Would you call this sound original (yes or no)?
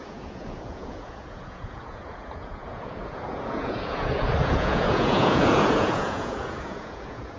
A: no